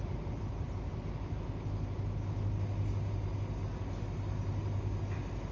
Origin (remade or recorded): recorded